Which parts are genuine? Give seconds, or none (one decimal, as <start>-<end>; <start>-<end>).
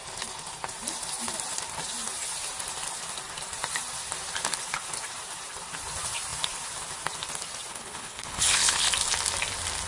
0.0-7.7; 8.9-9.9